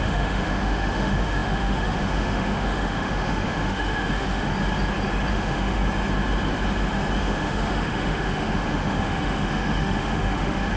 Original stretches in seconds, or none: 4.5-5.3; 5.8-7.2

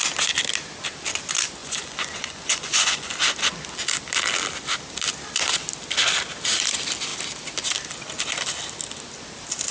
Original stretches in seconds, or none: 0.0-1.6; 3.1-9.7

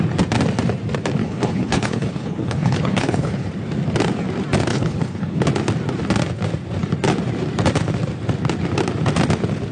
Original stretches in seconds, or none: 0.0-1.2; 3.5-4.7; 5.4-9.7